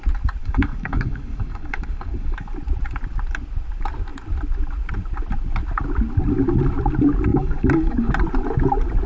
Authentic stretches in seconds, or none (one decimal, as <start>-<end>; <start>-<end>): 0.0-0.4; 2.5-7.3; 8.1-9.1